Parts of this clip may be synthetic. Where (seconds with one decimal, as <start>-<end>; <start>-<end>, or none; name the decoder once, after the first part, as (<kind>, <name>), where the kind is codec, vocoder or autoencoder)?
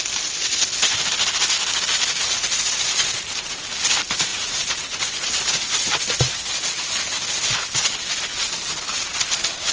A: 4.3-6.5 (vocoder, BigVGAN v2)